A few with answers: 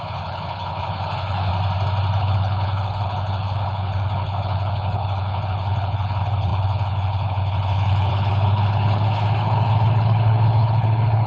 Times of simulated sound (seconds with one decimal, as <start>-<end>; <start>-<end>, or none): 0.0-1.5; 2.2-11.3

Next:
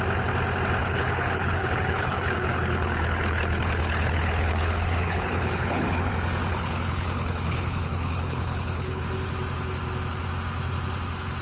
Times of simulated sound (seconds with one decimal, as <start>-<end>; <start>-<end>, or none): 0.8-6.1; 6.5-9.0

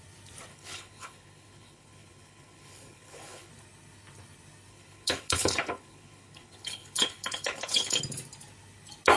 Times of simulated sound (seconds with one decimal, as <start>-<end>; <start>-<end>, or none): 0.5-3.5; 4.7-8.0

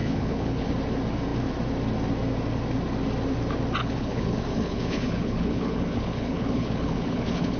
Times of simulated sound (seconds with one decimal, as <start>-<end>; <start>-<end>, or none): 0.0-0.7; 3.8-7.6